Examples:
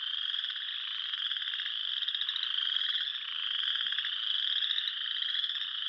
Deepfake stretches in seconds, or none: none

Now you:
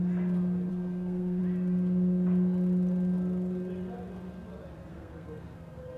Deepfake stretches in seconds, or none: 0.7-1.4 (codec, SNAC); 4.9-6.0

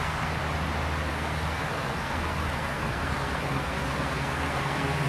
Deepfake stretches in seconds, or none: 0.0-0.4 (codec, SNAC); 1.1-5.1

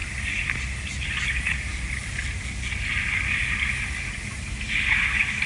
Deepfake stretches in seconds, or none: none

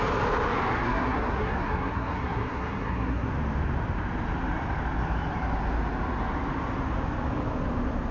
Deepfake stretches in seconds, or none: 0.7-3.3 (codec, SNAC)

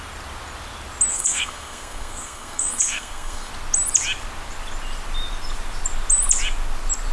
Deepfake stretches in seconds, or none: 1.1-3.5 (codec, SNAC)

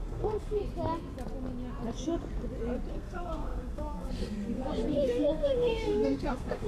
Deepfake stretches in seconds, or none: 0.0-0.6 (codec, SNAC); 2.9-6.7